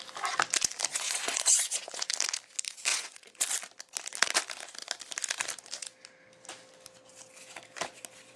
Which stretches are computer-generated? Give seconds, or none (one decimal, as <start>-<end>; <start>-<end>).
0.9-2.1; 2.9-3.4

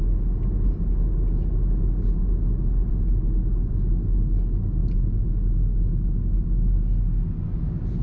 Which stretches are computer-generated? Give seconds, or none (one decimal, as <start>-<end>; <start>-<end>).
none